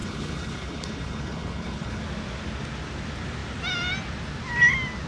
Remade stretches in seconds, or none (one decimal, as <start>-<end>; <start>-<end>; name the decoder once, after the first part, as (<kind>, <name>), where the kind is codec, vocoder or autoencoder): 0.0-2.0 (codec, HILCodec)